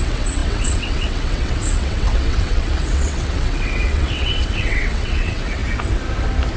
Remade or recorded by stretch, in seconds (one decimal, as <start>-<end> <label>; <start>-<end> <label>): 0.0-5.6 remade; 5.6-6.6 recorded